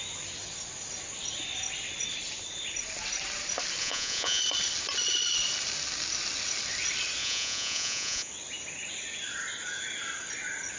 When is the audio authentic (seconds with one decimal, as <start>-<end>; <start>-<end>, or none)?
0.0-3.8; 4.4-7.2; 8.3-10.8